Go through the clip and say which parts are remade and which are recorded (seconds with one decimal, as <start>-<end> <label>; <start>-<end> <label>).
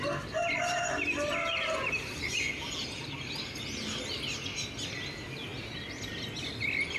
0.0-7.0 recorded